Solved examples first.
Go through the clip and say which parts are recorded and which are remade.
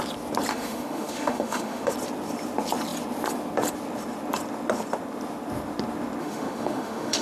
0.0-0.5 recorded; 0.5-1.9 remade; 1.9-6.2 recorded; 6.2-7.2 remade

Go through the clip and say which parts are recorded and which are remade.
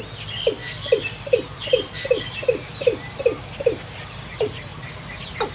0.0-5.5 recorded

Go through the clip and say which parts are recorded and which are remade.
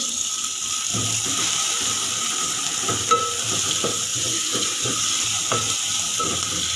0.0-4.1 recorded; 4.1-4.9 remade; 4.9-6.8 recorded